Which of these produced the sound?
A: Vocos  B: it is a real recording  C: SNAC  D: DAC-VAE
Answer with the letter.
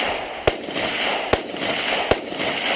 B